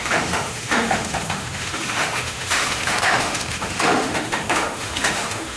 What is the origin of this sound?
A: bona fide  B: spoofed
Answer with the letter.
B